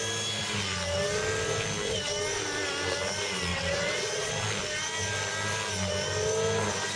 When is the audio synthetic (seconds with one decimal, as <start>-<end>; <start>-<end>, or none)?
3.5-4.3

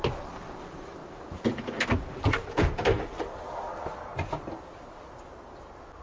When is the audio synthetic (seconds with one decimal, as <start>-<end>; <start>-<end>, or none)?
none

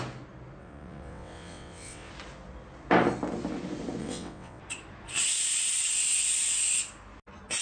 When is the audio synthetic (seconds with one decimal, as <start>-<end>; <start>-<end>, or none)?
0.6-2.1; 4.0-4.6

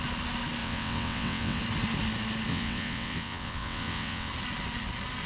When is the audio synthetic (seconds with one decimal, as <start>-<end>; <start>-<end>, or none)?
0.6-1.6; 2.5-4.3

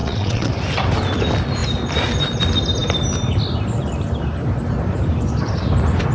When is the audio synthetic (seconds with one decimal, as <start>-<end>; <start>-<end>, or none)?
0.0-0.5

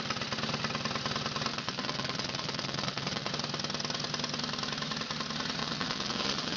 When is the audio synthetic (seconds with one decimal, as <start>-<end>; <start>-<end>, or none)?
1.5-3.3; 5.6-6.6

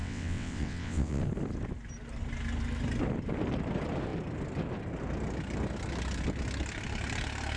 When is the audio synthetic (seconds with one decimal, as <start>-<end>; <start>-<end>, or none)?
0.0-1.2

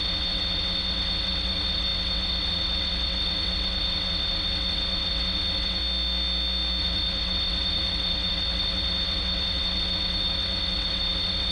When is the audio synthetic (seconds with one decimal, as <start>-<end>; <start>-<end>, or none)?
0.0-5.8; 6.8-11.5